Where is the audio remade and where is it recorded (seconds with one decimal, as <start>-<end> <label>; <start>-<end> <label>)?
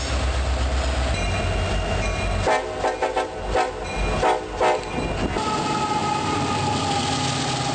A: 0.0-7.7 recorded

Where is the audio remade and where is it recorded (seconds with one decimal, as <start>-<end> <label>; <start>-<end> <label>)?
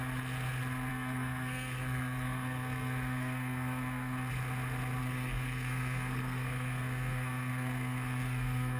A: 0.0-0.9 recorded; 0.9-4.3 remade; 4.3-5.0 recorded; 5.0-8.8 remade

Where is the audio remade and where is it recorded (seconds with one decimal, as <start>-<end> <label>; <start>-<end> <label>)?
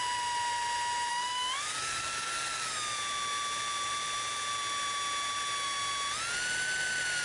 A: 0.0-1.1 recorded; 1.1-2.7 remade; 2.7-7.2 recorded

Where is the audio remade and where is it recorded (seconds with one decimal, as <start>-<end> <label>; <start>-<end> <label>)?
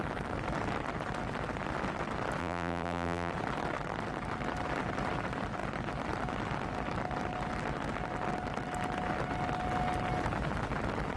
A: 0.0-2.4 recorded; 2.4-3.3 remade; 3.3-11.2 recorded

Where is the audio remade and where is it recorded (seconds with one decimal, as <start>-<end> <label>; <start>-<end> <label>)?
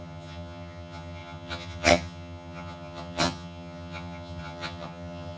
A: 0.0-5.4 remade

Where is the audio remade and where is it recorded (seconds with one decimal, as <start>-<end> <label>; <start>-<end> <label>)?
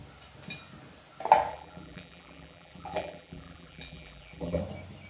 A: 0.0-1.5 recorded; 1.5-4.6 remade; 4.6-5.1 recorded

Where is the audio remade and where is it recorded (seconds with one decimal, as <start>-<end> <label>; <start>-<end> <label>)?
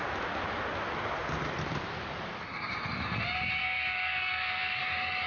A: 0.0-3.6 recorded; 3.6-4.8 remade; 4.8-5.3 recorded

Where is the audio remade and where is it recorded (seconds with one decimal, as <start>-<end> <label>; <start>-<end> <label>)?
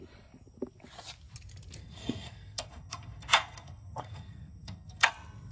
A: 0.0-1.8 recorded; 1.8-5.1 remade; 5.1-5.5 recorded